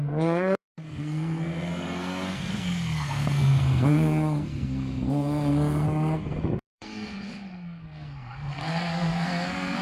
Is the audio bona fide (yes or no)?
no